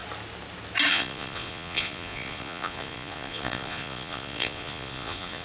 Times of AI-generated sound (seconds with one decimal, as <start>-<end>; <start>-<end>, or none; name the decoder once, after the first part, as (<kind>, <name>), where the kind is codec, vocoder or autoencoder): 0.9-5.4 (vocoder, Vocos)